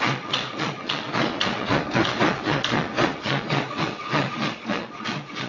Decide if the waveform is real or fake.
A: fake